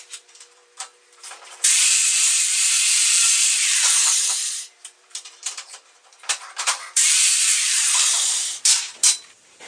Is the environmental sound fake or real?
fake